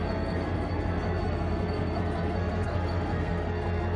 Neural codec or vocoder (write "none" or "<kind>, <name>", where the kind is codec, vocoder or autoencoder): codec, SNAC